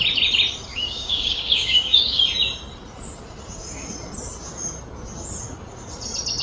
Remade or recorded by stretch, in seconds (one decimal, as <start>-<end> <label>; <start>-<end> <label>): 0.0-0.7 recorded; 0.7-2.2 remade; 2.2-6.4 recorded